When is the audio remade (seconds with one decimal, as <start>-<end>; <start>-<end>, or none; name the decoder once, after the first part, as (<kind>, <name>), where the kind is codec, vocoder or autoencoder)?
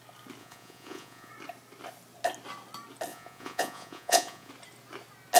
0.4-1.3 (vocoder, Vocos); 3.1-4.5